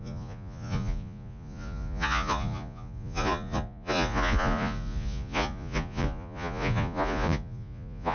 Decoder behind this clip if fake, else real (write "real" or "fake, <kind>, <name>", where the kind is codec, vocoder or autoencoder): fake, vocoder, Vocos